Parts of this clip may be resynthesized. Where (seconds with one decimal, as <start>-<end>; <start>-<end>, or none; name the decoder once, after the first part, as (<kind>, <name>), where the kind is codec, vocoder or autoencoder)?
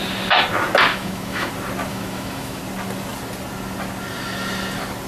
0.9-1.5 (autoencoder, DAC-VAE); 1.9-2.6